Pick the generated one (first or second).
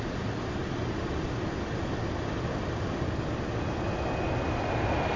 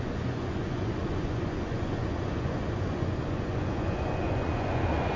second